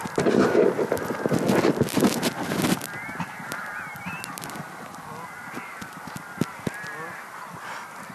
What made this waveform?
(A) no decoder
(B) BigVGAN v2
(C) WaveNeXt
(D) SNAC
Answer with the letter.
A